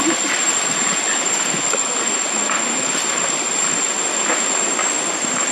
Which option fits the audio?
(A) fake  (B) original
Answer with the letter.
B